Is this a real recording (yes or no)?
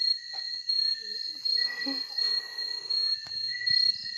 yes